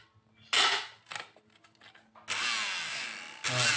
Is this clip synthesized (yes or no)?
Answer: no